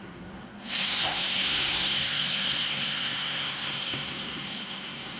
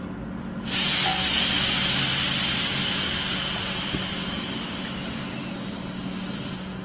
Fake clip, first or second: first